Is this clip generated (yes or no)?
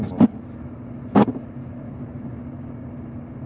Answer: no